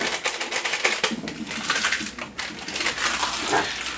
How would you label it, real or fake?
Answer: real